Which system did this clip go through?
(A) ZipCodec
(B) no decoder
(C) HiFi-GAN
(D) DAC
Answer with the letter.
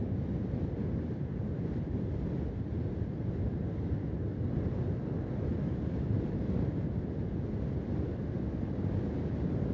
B